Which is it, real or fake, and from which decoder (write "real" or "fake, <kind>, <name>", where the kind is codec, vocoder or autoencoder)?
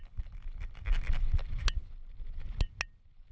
real